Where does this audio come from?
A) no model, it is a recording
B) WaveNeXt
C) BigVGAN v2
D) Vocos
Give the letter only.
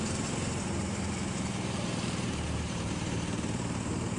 C